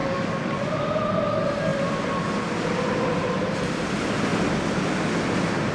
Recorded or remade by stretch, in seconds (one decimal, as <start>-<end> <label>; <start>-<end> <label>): 0.0-0.7 remade; 0.7-5.7 recorded